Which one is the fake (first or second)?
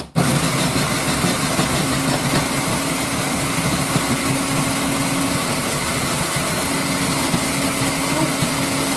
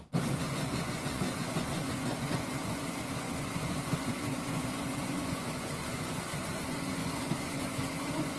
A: second